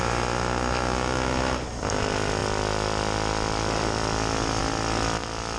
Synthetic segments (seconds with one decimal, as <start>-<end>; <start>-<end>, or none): none